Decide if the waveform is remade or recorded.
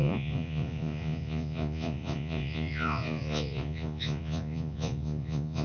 remade